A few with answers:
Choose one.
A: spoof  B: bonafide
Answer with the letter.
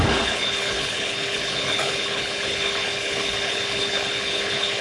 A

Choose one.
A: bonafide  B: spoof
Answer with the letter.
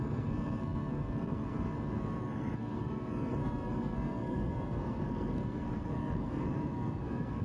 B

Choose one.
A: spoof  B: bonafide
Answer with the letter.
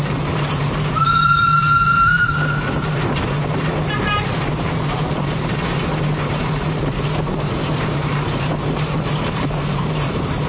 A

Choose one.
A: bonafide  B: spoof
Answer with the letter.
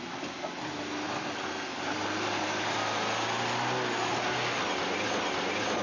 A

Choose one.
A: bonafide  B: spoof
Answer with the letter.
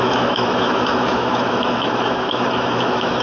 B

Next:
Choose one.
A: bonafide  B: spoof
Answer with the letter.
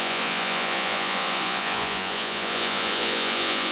B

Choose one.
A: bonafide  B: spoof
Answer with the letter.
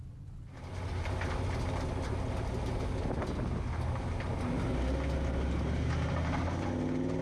A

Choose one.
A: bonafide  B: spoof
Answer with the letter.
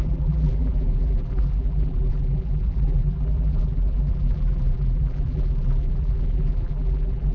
B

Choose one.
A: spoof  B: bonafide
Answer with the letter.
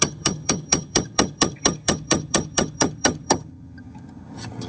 A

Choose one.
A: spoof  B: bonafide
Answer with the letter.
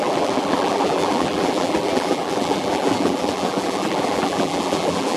A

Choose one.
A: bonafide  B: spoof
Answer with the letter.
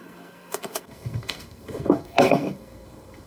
B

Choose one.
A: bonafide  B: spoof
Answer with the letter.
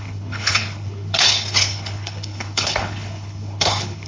B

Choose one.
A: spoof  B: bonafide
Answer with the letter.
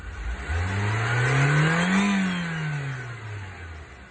B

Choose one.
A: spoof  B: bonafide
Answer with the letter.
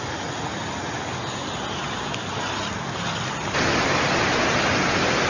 B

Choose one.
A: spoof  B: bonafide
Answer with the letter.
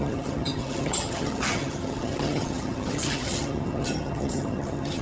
A